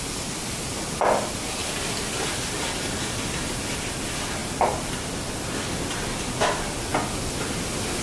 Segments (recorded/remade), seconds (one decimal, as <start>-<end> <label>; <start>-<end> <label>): 0.0-8.0 recorded